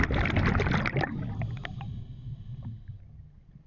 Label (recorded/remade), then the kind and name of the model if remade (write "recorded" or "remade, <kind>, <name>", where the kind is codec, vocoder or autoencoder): recorded